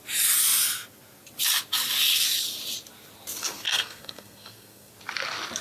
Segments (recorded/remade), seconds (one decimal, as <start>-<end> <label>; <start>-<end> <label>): 0.0-3.4 recorded; 3.4-4.9 remade; 4.9-5.6 recorded